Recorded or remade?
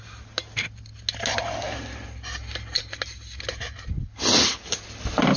recorded